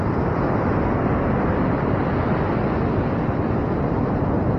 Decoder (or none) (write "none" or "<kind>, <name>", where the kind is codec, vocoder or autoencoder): none